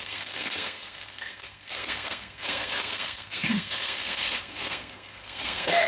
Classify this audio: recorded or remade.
remade